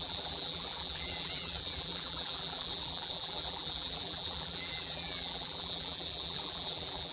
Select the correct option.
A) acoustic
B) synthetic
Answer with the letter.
B